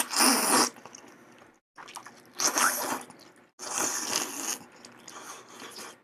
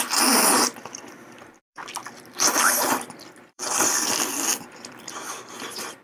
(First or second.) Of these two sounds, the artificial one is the second